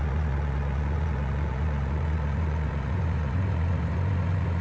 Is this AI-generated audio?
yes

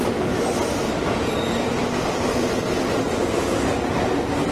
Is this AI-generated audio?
no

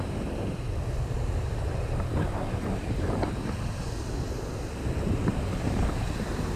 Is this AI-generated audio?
no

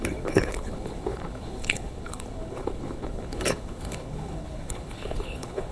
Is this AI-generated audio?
yes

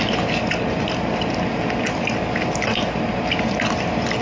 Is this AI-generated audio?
no